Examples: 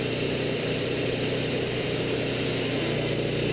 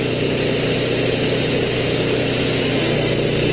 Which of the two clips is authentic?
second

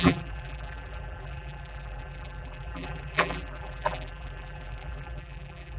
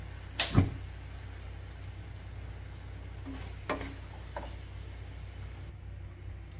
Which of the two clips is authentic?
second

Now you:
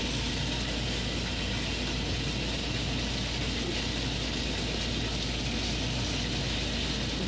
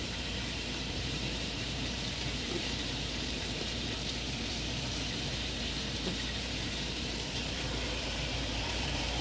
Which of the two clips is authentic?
first